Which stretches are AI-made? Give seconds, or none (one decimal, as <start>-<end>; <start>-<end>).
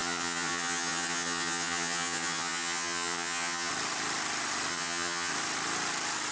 0.0-3.7; 4.7-5.3